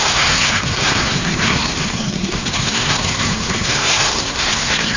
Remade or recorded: remade